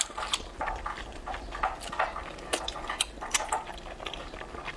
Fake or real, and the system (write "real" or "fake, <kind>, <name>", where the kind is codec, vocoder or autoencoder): real